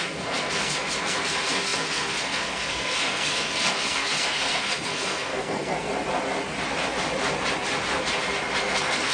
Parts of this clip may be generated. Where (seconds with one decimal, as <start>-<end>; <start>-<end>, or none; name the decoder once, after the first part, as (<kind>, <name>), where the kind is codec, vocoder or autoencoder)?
0.0-5.9 (codec, SNAC); 8.6-9.1